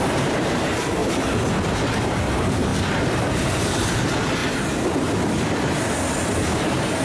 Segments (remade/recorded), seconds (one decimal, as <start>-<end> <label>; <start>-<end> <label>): 0.0-1.0 remade; 1.0-2.0 recorded; 2.0-4.4 remade; 4.4-6.3 recorded; 6.3-7.0 remade